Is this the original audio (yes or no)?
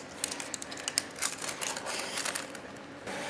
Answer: yes